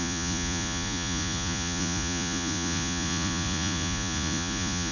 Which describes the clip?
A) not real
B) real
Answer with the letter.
A